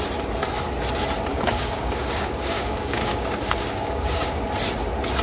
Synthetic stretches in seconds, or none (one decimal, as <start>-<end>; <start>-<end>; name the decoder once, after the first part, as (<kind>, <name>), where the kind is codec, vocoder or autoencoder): 1.3-4.4 (codec, DAC)